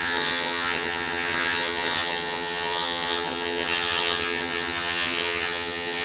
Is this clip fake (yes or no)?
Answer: yes